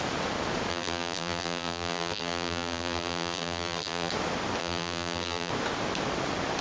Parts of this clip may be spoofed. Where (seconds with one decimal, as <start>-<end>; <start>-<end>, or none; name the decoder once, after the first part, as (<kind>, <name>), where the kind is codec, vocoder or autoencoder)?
0.7-4.1 (vocoder, BigVGAN v2); 4.6-5.5